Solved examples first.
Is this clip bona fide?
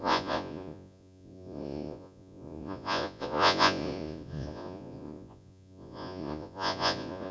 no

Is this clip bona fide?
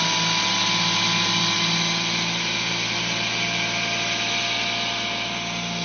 yes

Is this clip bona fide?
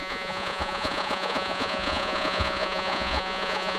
no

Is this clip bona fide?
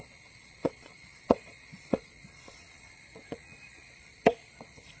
no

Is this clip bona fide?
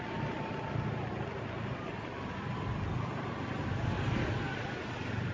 yes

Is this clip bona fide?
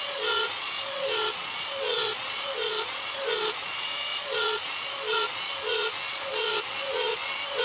no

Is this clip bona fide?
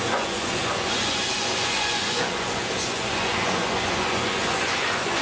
no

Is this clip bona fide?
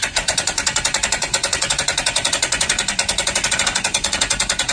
no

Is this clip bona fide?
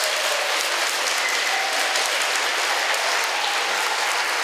yes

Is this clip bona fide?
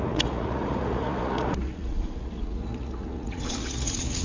no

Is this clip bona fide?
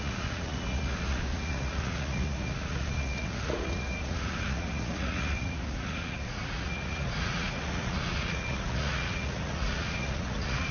no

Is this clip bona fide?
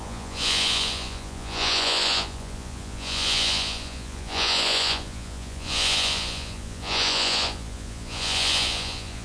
no